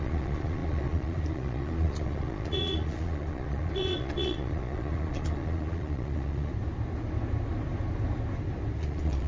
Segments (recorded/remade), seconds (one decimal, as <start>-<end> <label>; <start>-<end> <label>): 0.0-6.5 remade; 6.5-8.8 recorded; 8.8-9.3 remade